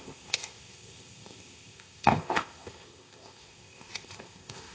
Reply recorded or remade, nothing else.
remade